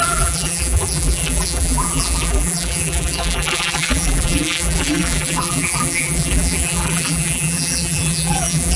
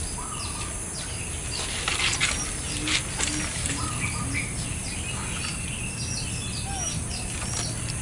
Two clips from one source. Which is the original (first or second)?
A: second